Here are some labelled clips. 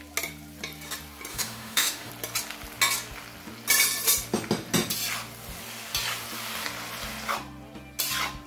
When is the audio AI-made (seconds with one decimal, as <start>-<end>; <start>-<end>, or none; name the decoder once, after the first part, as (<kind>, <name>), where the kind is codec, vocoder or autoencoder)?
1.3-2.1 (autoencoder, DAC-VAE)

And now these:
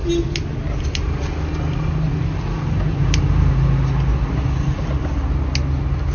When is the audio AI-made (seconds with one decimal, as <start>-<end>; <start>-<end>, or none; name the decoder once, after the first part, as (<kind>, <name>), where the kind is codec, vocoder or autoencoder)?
none

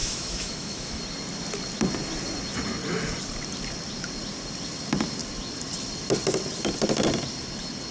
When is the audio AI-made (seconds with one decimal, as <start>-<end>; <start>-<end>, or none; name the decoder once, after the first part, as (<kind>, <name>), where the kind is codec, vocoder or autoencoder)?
0.0-1.0 (autoencoder, DAC-VAE)

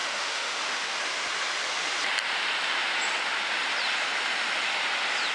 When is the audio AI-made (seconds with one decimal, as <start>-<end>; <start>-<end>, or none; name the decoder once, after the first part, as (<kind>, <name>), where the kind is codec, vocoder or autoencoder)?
0.0-0.9 (autoencoder, DAC-VAE)

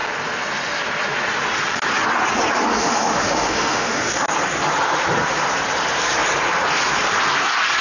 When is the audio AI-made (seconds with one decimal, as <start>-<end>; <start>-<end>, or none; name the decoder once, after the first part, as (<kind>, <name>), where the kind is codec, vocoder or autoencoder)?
2.8-4.3 (autoencoder, DAC-VAE)

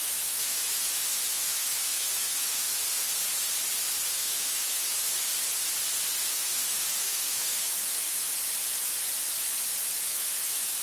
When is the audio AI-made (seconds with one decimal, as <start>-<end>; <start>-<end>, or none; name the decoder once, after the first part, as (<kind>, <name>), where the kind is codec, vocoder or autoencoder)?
0.0-3.1 (autoencoder, DAC-VAE); 4.0-5.3; 6.3-8.3; 10.1-10.8

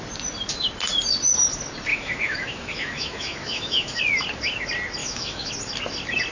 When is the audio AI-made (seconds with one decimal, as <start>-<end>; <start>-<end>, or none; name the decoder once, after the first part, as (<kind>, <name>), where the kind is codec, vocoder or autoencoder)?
1.9-4.0 (autoencoder, DAC-VAE); 5.0-5.5

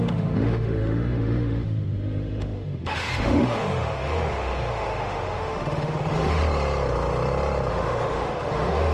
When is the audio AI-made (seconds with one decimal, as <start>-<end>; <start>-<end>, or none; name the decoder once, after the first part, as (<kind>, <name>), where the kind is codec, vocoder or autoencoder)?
0.0-6.4 (autoencoder, DAC-VAE); 7.7-8.9